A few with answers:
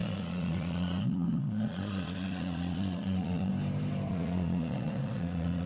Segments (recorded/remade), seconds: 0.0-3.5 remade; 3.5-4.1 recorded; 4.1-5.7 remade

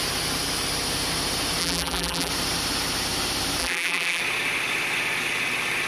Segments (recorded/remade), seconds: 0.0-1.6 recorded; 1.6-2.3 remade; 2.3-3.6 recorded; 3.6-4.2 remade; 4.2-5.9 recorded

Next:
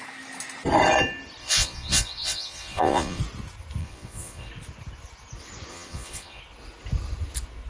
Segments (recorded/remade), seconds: 0.0-1.4 recorded; 1.4-3.2 remade; 3.2-3.8 recorded; 3.8-4.5 remade; 4.5-5.7 recorded; 5.7-6.4 remade; 6.4-7.7 recorded